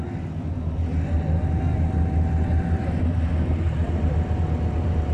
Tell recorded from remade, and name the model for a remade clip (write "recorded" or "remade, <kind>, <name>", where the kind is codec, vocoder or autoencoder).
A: recorded